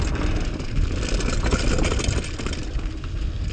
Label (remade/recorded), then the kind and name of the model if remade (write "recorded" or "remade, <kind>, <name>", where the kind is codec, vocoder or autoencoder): recorded